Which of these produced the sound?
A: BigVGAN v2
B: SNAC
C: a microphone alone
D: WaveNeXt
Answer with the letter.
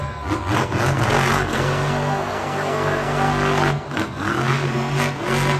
B